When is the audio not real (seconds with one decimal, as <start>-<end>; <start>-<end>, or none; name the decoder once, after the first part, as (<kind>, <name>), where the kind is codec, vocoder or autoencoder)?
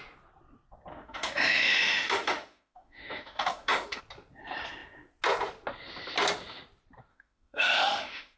0.9-4.0 (autoencoder, DAC-VAE); 7.1-8.4